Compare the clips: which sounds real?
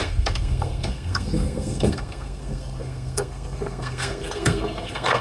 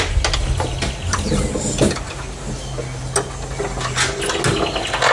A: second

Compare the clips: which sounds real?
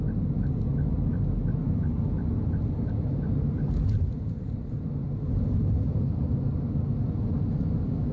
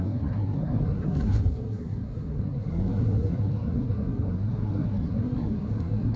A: first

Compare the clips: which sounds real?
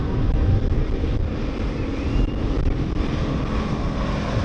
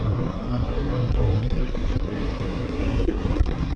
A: first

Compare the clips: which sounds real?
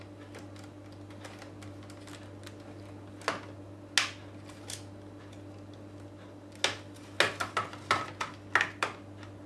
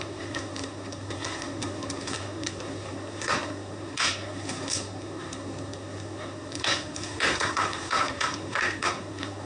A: first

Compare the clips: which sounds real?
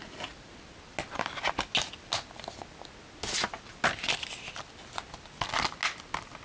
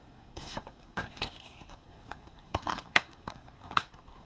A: first